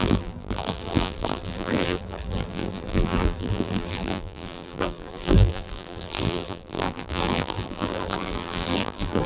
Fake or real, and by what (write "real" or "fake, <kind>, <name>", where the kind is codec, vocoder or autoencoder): fake, vocoder, BigVGAN v2